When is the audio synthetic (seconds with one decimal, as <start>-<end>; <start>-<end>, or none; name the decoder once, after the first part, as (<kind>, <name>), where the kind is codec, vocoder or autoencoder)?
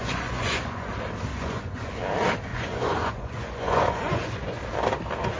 0.0-0.9 (vocoder, Vocos); 1.3-1.9; 2.5-4.6